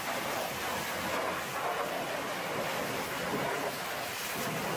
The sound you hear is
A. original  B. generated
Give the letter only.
A